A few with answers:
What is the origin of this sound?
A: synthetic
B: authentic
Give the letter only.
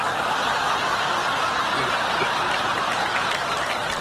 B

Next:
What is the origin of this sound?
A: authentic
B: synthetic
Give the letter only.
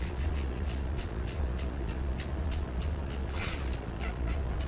B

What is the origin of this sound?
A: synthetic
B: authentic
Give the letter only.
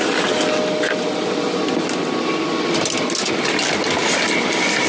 B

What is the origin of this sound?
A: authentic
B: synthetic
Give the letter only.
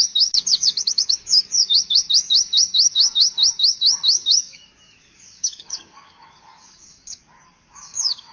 B